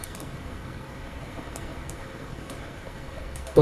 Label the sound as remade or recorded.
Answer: remade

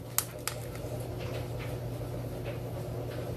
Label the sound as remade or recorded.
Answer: recorded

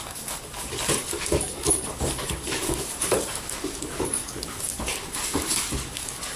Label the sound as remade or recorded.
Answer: remade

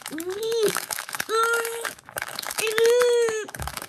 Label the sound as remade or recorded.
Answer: remade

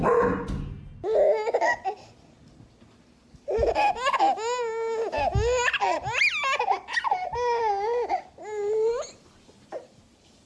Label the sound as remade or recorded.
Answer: recorded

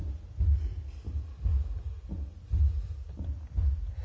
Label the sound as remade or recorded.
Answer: recorded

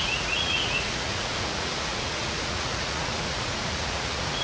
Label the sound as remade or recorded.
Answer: remade